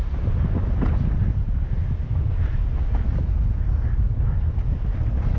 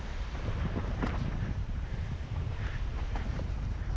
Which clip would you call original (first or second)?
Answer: first